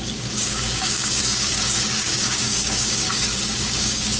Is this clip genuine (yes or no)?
no